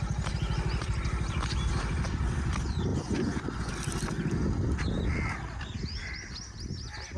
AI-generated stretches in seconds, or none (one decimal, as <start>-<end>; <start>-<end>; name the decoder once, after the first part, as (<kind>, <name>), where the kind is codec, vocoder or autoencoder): 2.9-3.7 (vocoder, Vocos)